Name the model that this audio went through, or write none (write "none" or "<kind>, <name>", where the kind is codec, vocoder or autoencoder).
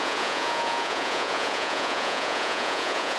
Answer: vocoder, Vocos